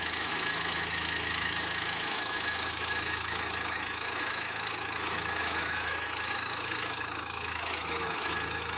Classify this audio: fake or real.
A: fake